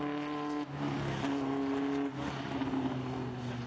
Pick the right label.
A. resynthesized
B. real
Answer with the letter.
B